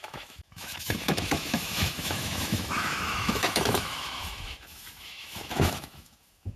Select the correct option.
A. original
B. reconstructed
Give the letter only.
B